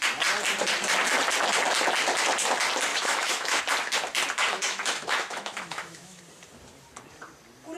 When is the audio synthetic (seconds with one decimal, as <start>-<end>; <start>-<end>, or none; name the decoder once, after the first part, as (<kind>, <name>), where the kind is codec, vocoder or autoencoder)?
2.9-3.6 (autoencoder, DAC-VAE); 4.5-6.2